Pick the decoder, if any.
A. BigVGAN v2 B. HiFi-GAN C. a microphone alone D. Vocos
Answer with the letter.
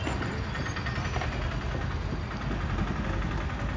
C